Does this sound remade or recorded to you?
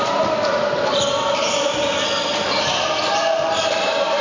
remade